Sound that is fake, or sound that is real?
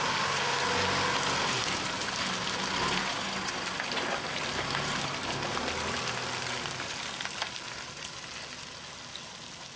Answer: real